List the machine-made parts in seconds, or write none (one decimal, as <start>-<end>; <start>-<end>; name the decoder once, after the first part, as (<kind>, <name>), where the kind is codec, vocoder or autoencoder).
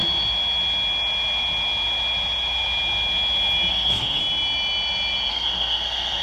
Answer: 3.7-4.2 (codec, SNAC); 5.3-6.2